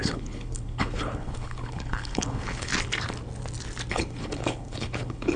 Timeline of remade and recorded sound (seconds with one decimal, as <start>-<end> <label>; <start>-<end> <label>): 0.0-2.7 remade; 2.7-3.9 recorded; 3.9-5.4 remade